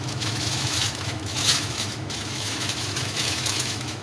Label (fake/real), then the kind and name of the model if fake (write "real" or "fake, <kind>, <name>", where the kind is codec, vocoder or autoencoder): fake, autoencoder, DAC-VAE